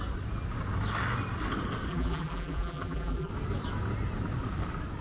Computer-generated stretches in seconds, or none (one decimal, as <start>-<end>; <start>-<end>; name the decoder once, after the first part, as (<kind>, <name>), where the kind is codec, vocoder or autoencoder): 1.9-3.3 (vocoder, BigVGAN v2)

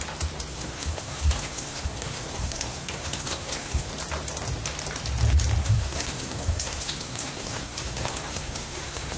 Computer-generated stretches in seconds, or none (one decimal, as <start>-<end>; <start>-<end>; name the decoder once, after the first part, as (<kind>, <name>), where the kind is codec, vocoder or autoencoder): 0.5-3.9 (codec, SNAC); 5.6-9.2

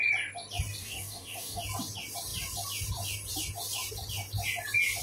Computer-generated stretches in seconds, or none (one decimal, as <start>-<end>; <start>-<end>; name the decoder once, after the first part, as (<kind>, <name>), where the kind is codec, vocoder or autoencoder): 0.8-1.6 (codec, DAC)

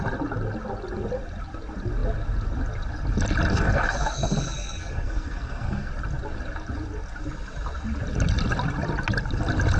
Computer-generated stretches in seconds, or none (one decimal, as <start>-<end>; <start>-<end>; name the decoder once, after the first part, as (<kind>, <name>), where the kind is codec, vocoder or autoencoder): 3.5-5.9 (codec, SNAC)

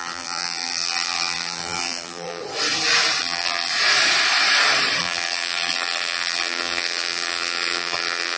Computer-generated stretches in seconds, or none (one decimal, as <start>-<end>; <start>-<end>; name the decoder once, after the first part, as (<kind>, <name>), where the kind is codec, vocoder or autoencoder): 0.0-2.4 (vocoder, BigVGAN v2); 3.2-3.7; 5.0-8.4